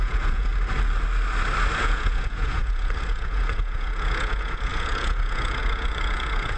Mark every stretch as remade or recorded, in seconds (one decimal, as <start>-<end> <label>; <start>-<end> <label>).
0.0-0.5 remade; 0.5-1.8 recorded; 1.8-6.6 remade